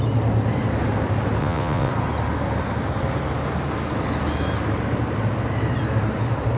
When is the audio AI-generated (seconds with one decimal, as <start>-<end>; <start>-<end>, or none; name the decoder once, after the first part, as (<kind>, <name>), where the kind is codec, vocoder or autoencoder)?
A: 1.4-1.9 (vocoder, WaveNeXt)